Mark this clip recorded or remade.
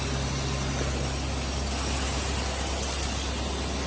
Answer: recorded